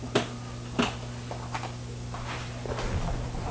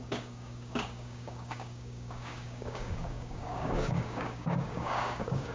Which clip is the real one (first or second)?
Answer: first